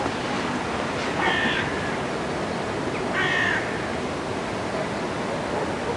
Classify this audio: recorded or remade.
recorded